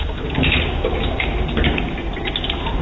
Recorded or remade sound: recorded